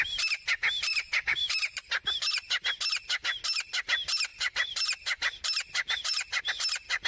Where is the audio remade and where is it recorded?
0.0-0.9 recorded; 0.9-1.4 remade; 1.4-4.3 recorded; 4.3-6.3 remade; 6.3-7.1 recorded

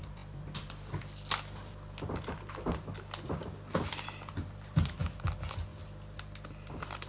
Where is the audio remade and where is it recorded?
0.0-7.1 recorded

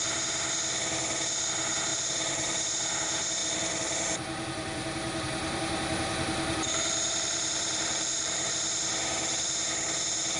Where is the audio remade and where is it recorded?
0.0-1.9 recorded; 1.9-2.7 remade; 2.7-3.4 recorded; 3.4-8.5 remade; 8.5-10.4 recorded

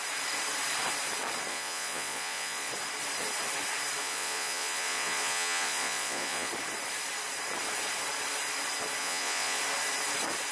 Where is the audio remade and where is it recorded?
0.0-1.5 recorded; 1.5-2.7 remade; 2.7-4.0 recorded; 4.0-6.5 remade; 6.5-9.0 recorded; 9.0-9.6 remade; 9.6-10.5 recorded

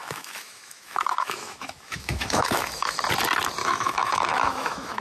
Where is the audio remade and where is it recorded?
0.0-3.0 remade; 3.0-3.6 recorded; 3.6-5.0 remade